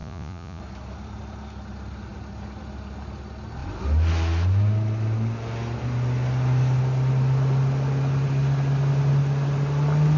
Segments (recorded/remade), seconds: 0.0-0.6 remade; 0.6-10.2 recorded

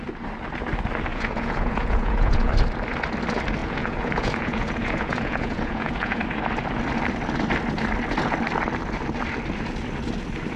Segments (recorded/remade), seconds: 0.0-1.1 recorded; 1.1-2.5 remade; 2.5-3.6 recorded; 3.6-6.2 remade; 6.2-10.6 recorded

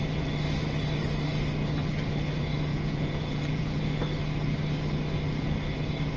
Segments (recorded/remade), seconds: 0.0-2.7 recorded; 2.7-3.8 remade; 3.8-6.2 recorded

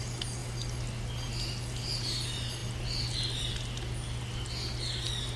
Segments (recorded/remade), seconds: 0.0-5.4 recorded

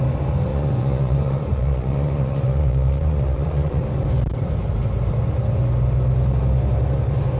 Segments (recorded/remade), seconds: 0.0-0.5 recorded; 0.5-3.8 remade; 3.8-7.4 recorded

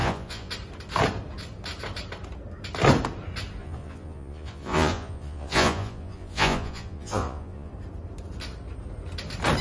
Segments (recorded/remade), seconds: 0.0-0.5 remade; 0.5-3.6 recorded; 3.6-7.7 remade; 7.7-9.6 recorded